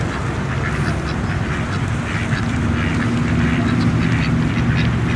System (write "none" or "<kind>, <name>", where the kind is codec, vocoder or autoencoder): none